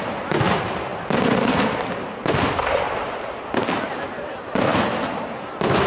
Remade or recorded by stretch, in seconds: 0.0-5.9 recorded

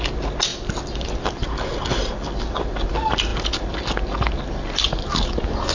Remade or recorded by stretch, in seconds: 0.0-5.7 recorded

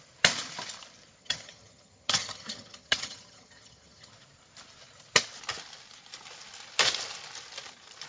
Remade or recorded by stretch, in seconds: 0.0-1.2 recorded; 1.2-4.1 remade; 4.1-8.1 recorded

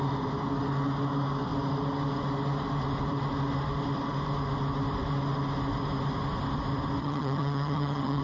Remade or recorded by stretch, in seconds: 0.0-7.0 recorded; 7.0-8.2 remade

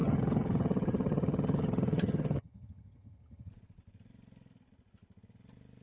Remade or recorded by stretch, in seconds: 0.0-3.5 remade; 3.5-5.8 recorded